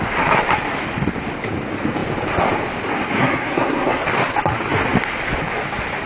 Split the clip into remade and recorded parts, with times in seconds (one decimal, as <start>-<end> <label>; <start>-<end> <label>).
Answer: 0.0-3.2 recorded; 3.2-4.0 remade; 4.0-6.1 recorded